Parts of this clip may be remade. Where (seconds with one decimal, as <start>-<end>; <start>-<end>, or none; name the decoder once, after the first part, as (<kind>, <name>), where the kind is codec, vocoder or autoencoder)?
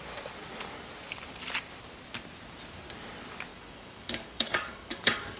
3.5-5.4 (codec, DAC)